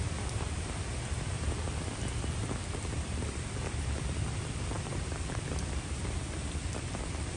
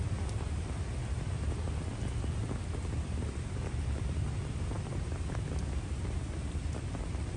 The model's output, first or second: first